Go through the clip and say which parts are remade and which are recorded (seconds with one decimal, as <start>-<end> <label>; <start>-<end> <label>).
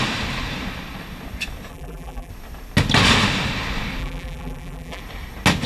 0.0-1.7 recorded; 1.7-2.3 remade; 2.3-4.0 recorded; 4.0-5.0 remade; 5.0-5.7 recorded